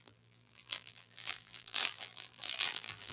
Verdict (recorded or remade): remade